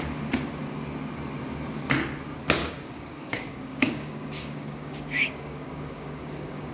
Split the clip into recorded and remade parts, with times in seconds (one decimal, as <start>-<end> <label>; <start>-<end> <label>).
0.0-2.6 recorded; 2.6-6.7 remade